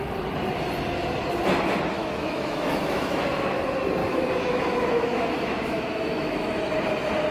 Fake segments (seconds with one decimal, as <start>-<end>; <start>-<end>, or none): 2.0-3.6; 4.0-6.6